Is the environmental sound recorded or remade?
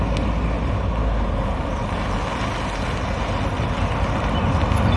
recorded